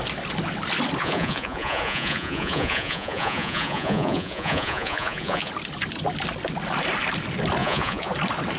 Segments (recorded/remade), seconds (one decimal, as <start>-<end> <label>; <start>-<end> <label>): 0.0-1.0 recorded; 1.0-5.5 remade; 5.5-7.6 recorded; 7.6-8.1 remade; 8.1-8.6 recorded